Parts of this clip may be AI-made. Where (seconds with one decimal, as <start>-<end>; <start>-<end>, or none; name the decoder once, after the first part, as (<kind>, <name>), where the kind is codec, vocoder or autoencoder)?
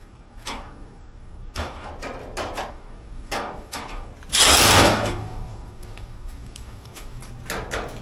0.0-1.9 (codec, DAC); 2.7-4.1; 4.7-7.2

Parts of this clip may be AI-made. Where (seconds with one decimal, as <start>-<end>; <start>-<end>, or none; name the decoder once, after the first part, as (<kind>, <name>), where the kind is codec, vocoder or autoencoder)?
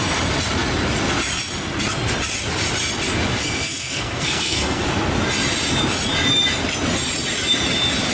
3.4-4.8 (codec, SNAC)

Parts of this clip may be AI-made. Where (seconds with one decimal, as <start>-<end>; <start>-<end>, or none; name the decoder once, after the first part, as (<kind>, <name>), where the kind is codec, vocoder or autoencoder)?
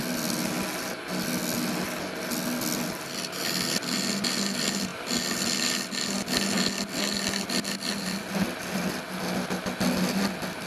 none